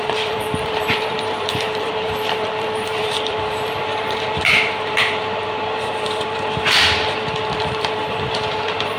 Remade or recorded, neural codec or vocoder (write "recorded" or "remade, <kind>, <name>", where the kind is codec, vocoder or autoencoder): remade, vocoder, BigVGAN v2